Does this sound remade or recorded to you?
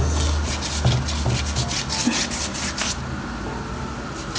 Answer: recorded